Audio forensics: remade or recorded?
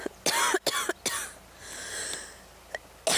recorded